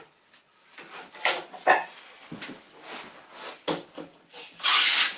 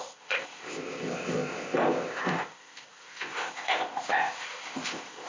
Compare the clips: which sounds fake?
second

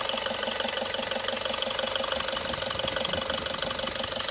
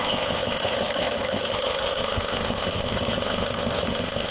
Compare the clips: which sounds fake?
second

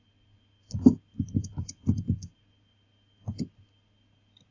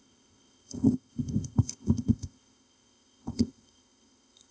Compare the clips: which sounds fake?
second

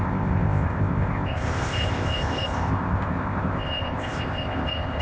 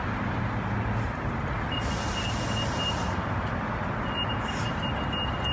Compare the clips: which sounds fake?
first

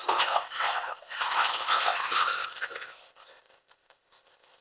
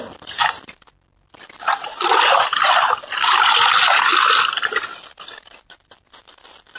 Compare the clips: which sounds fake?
first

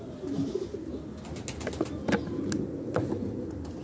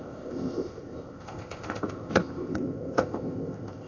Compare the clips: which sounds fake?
second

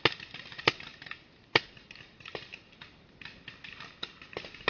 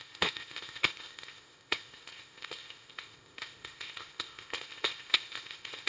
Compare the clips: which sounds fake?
second